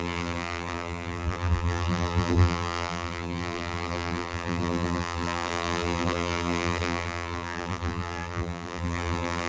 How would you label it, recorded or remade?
remade